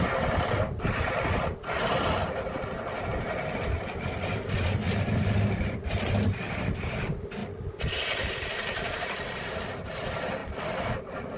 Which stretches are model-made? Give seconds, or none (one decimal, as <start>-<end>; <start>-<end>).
none